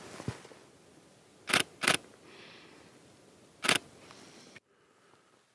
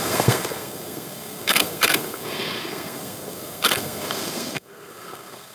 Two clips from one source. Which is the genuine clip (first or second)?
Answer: first